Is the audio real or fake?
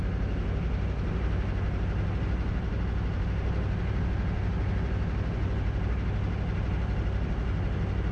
real